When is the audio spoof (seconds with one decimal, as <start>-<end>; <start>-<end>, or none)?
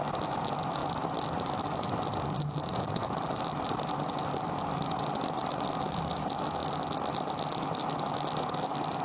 none